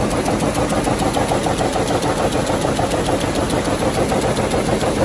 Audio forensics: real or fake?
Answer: real